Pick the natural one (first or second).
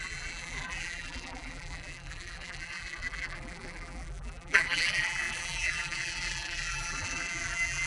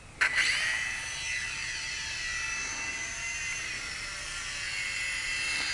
second